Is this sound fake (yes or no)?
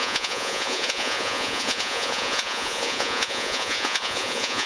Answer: yes